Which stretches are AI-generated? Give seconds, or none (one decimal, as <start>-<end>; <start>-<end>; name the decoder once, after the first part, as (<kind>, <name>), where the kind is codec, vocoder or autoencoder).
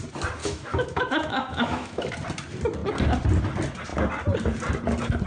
0.4-2.1 (autoencoder, DAC-VAE)